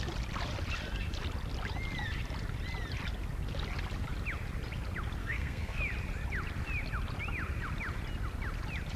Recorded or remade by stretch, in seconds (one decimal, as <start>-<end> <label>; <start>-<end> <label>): 0.0-5.2 recorded; 5.2-5.8 remade; 5.8-9.0 recorded